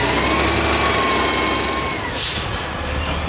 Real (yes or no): yes